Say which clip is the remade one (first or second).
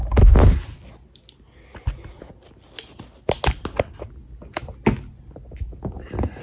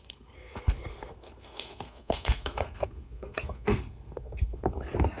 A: second